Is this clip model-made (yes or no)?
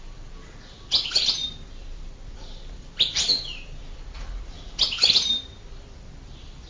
yes